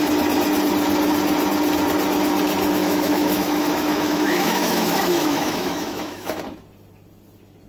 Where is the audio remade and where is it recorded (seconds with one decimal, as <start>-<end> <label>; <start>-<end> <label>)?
0.0-2.8 recorded; 2.8-6.4 remade; 6.4-7.7 recorded